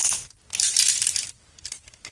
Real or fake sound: real